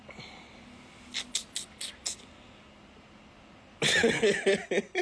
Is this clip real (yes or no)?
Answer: yes